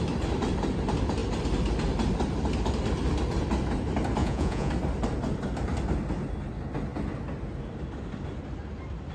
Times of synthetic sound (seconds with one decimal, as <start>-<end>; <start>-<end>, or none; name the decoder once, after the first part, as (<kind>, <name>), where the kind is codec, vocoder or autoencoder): 4.2-4.7 (vocoder, Vocos)